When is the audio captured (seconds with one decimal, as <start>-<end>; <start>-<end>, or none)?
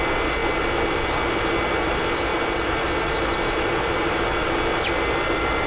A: 0.0-5.7